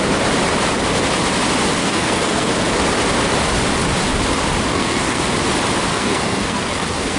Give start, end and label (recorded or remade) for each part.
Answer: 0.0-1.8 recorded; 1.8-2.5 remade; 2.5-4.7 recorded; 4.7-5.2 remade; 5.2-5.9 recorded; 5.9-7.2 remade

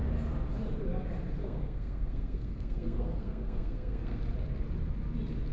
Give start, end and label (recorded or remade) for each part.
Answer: 0.0-1.4 recorded; 1.4-4.2 remade; 4.2-5.5 recorded

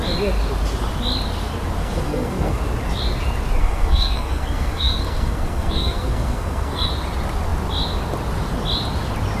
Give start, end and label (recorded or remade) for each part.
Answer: 0.0-1.8 recorded; 1.8-2.6 remade; 2.6-3.6 recorded; 3.6-6.9 remade; 6.9-9.4 recorded